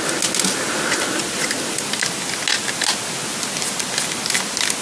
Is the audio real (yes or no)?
yes